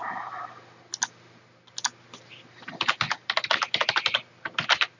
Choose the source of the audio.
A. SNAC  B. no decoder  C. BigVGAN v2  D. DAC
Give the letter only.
B